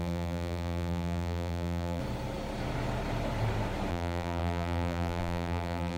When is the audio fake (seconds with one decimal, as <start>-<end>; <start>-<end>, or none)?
0.0-2.0; 3.9-6.0